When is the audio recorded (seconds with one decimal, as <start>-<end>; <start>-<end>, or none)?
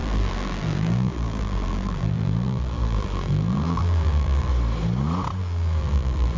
4.5-5.4